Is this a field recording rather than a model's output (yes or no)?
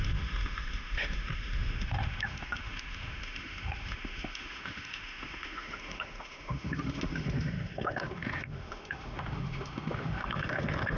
no